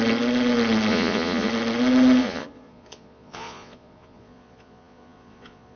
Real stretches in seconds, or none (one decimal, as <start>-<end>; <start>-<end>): 0.0-0.9; 1.5-2.2